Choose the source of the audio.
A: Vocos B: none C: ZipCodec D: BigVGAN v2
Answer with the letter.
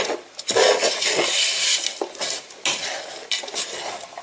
B